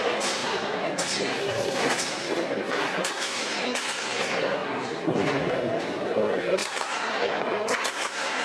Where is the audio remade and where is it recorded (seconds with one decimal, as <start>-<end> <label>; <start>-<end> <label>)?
0.0-8.4 remade

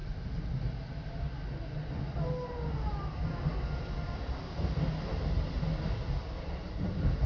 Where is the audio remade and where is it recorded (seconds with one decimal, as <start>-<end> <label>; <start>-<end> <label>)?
0.0-7.3 recorded

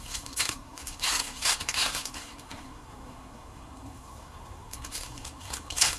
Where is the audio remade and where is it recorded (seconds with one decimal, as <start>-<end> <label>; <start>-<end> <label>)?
0.0-6.0 remade

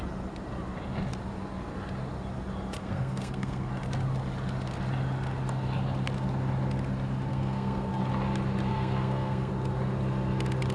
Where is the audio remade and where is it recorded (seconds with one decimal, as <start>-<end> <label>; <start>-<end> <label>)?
0.0-2.8 recorded; 2.8-3.7 remade; 3.7-7.3 recorded; 7.3-7.9 remade; 7.9-8.7 recorded; 8.7-9.5 remade; 9.5-10.7 recorded

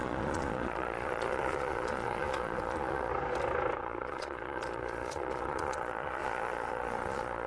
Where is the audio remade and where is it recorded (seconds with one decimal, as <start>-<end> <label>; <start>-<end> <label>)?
0.0-3.1 remade; 3.1-3.8 recorded; 3.8-7.5 remade

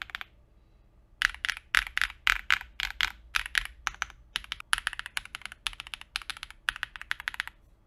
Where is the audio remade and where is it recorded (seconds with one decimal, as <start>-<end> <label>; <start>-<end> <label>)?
0.0-7.9 recorded

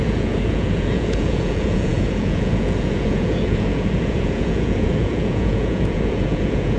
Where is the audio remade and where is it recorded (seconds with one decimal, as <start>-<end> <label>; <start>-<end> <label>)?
0.0-6.8 remade

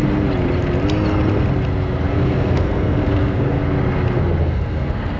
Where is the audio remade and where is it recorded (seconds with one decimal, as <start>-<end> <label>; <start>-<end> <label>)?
0.0-2.1 recorded; 2.1-3.6 remade; 3.6-4.4 recorded; 4.4-5.2 remade